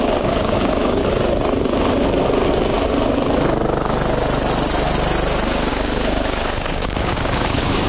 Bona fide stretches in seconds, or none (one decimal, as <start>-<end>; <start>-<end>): 1.0-5.7